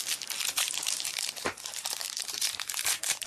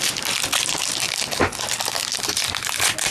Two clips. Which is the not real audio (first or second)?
first